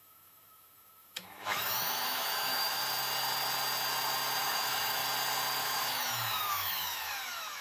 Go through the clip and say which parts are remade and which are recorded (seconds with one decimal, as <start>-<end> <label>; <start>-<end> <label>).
0.0-2.8 remade; 2.8-4.4 recorded; 4.4-5.0 remade; 5.0-5.6 recorded; 5.6-7.6 remade